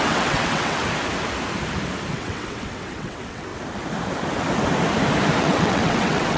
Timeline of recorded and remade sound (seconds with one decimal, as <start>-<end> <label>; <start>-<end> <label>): 0.0-0.8 remade; 0.8-2.1 recorded; 2.1-3.5 remade; 3.5-5.4 recorded; 5.4-6.4 remade